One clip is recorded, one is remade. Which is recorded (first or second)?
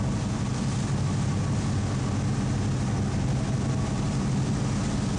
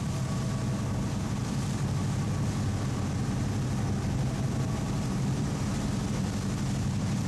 first